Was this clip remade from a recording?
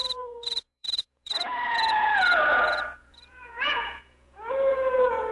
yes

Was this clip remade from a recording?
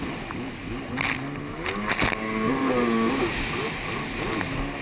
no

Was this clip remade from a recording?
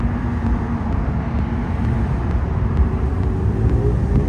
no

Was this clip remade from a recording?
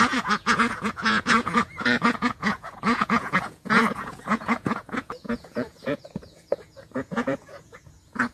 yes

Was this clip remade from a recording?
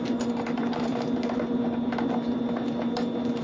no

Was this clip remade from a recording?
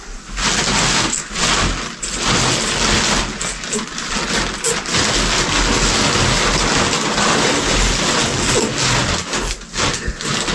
no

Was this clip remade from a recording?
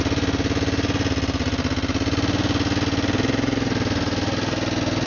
no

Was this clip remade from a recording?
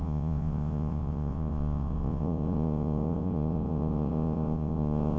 yes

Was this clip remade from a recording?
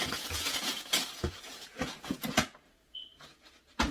yes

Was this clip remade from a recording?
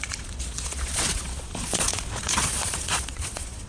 yes